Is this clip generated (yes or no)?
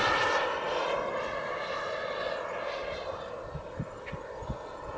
no